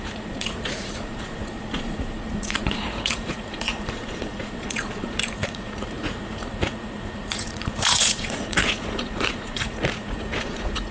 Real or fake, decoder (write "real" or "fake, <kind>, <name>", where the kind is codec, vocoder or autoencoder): fake, vocoder, Vocos